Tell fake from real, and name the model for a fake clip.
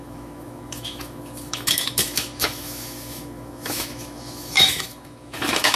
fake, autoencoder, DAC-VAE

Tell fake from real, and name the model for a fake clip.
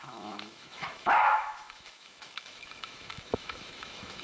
fake, autoencoder, DAC-VAE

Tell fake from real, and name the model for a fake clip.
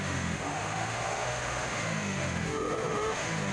fake, autoencoder, DAC-VAE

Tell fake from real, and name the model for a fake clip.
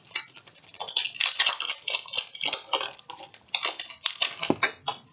real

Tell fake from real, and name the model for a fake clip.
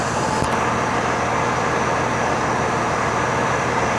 real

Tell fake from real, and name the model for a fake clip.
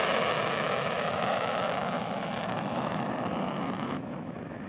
fake, autoencoder, DAC-VAE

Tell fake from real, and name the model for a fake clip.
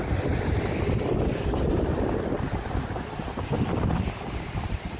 real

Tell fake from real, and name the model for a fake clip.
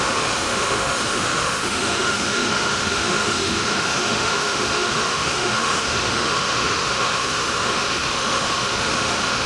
fake, autoencoder, DAC-VAE